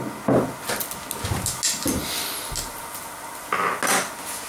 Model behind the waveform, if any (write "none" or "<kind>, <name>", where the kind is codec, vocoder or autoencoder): none